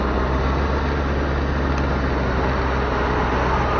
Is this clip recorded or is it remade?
recorded